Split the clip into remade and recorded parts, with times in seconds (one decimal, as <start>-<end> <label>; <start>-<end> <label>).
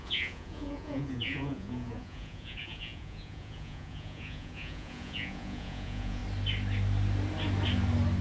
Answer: 0.0-6.2 remade; 6.2-8.2 recorded